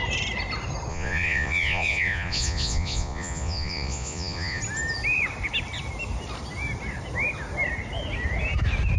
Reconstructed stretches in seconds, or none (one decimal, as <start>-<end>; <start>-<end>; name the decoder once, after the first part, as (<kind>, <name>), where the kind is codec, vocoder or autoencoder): 0.9-4.6 (vocoder, Vocos)